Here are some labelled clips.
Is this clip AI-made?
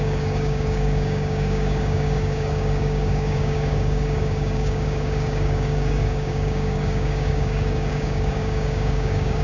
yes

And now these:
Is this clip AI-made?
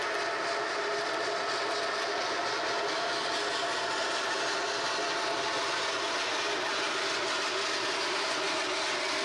no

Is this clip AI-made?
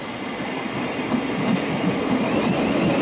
no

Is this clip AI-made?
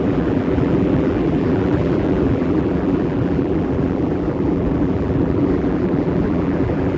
yes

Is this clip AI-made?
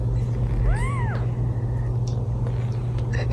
no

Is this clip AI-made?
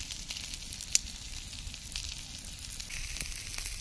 no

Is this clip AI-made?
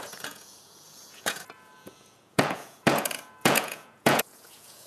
yes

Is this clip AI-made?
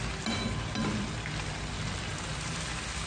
no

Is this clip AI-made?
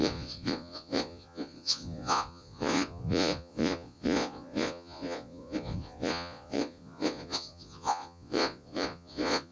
yes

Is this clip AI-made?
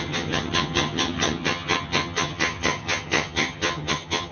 yes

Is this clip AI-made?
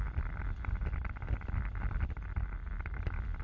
no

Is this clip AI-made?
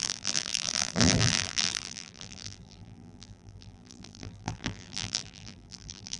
yes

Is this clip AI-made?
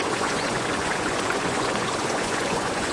yes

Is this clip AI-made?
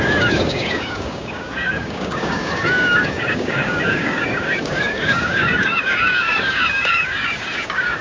yes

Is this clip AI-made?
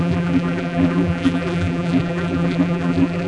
yes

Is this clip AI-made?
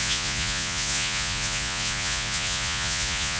yes